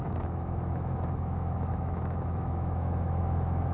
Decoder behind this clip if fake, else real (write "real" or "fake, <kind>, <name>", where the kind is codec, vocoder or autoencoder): fake, autoencoder, DAC-VAE